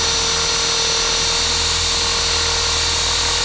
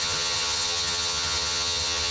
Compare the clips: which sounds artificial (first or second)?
second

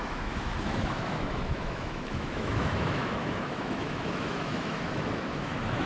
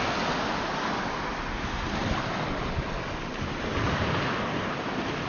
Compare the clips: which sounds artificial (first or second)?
first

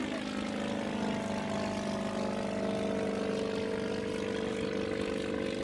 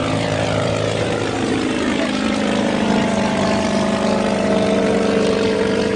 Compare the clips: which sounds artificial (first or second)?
second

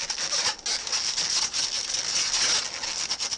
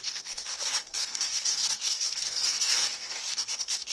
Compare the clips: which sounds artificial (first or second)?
second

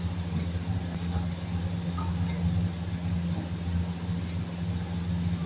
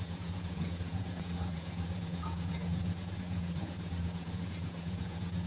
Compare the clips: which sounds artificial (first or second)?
second